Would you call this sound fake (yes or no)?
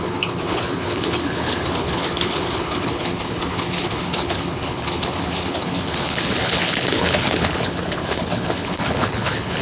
yes